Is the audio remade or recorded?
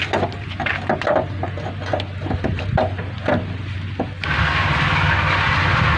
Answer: recorded